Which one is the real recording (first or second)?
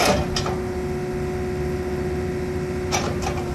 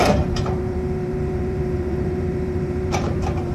first